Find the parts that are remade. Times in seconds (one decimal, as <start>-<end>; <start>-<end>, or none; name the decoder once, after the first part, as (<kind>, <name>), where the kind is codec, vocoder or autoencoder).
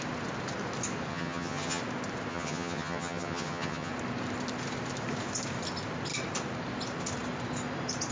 1.1-1.8 (vocoder, HiFi-GAN); 2.3-3.9